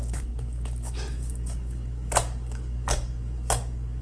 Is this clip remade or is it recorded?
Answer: remade